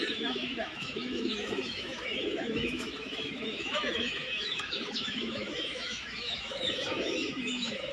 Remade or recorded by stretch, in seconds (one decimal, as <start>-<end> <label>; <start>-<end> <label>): 0.0-7.9 remade